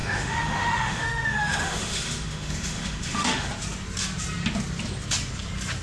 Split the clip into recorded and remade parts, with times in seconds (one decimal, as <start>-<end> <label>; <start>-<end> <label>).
0.0-3.5 remade; 3.5-5.8 recorded